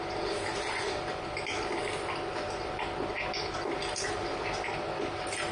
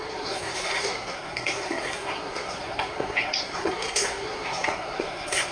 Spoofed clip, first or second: second